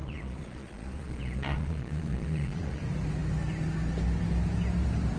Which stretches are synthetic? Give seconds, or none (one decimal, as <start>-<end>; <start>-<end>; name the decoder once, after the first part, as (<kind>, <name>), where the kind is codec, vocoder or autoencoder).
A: 0.0-2.8 (vocoder, Vocos)